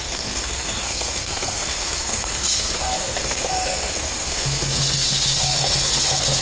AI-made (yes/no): yes